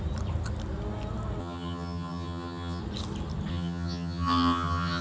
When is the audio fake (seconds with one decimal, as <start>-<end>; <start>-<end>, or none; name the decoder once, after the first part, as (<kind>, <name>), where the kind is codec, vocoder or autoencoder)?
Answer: 1.4-2.8 (vocoder, HiFi-GAN); 3.5-5.0